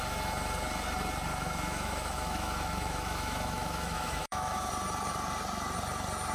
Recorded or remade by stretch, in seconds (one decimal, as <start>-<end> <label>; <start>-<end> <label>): 0.0-1.3 recorded; 1.3-4.7 remade; 4.7-6.3 recorded

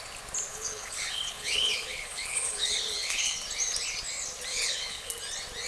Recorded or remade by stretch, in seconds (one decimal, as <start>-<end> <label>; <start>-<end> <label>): 0.0-0.5 recorded; 0.5-3.4 remade; 3.4-4.5 recorded; 4.5-5.1 remade; 5.1-5.7 recorded

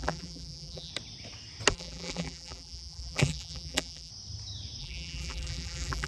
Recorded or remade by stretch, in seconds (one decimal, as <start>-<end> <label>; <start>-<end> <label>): 0.0-0.9 remade; 0.9-1.7 recorded; 1.7-4.1 remade; 4.1-4.8 recorded; 4.8-6.1 remade

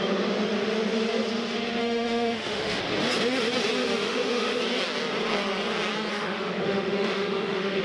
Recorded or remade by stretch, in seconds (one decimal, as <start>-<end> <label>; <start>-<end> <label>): 0.0-1.8 recorded; 1.8-2.8 remade; 2.8-3.8 recorded; 3.8-4.6 remade; 4.6-6.1 recorded; 6.1-7.8 remade

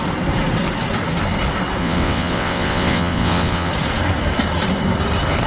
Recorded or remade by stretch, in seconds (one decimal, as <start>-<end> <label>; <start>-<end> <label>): 0.0-1.8 recorded; 1.8-3.7 remade; 3.7-5.5 recorded

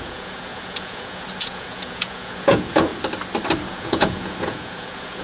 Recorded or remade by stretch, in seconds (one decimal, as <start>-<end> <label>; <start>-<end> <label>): 0.0-2.9 remade; 2.9-3.7 recorded; 3.7-5.2 remade

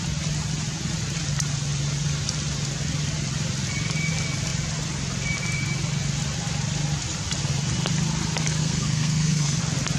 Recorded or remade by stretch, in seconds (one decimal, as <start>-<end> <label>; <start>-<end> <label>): 0.0-8.6 recorded; 8.6-9.6 remade; 9.6-10.0 recorded

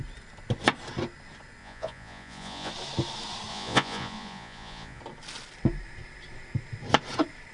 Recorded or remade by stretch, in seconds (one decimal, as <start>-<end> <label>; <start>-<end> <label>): 0.0-1.6 recorded; 1.6-2.7 remade; 2.7-3.5 recorded; 3.5-5.0 remade; 5.0-7.5 recorded